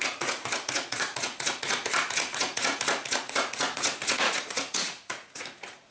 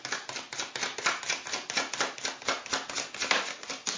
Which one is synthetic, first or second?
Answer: first